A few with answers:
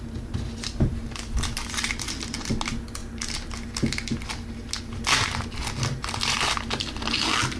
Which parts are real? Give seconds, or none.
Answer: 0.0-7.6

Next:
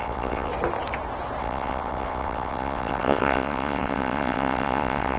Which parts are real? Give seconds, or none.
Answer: 0.5-1.4

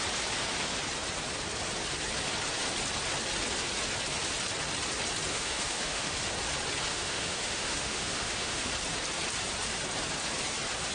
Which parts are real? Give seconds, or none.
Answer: 0.0-5.3; 6.2-6.9; 8.7-10.9